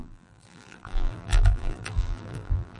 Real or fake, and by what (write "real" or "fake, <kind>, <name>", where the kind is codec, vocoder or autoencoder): fake, vocoder, BigVGAN v2